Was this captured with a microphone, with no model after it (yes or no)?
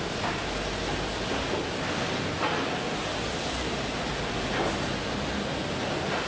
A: yes